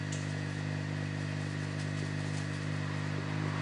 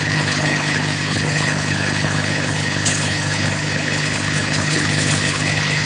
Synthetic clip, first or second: second